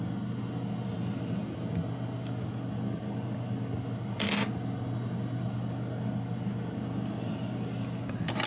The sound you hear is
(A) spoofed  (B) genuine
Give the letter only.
B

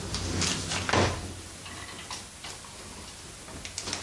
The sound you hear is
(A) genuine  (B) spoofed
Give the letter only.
A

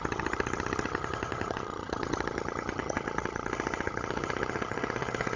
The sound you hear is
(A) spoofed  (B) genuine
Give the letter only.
A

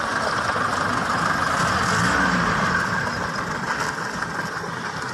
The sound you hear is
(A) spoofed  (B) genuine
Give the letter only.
B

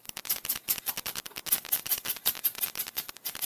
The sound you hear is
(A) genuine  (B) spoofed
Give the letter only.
A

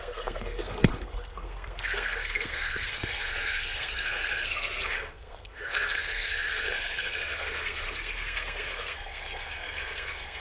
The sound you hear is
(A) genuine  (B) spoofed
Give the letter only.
B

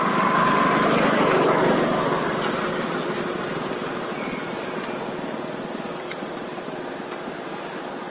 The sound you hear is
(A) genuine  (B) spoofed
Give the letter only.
A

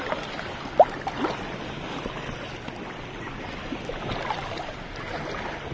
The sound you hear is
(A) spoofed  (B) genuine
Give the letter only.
B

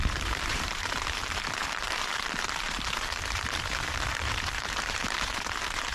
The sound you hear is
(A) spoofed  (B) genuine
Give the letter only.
A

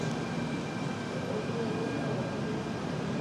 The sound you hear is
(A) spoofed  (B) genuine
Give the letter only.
B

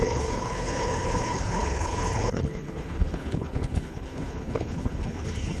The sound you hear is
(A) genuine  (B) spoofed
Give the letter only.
B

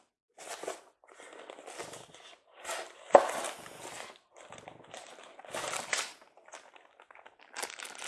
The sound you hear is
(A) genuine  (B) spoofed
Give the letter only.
A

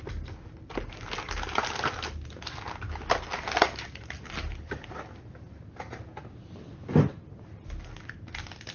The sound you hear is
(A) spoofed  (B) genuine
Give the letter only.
B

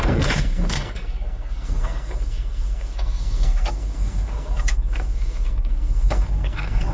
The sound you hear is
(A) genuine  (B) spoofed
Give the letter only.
B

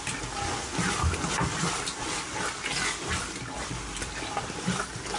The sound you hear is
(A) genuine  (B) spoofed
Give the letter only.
A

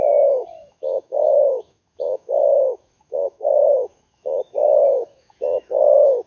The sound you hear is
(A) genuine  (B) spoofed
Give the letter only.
B